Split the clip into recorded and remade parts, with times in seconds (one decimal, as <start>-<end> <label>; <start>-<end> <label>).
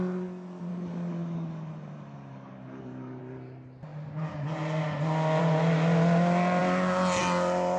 0.0-0.7 recorded; 0.7-3.2 remade; 3.2-7.8 recorded